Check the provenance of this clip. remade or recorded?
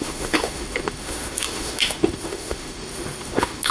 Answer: remade